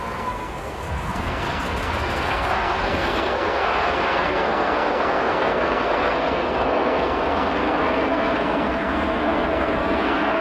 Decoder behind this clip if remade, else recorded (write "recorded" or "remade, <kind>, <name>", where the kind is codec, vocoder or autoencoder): remade, codec, SNAC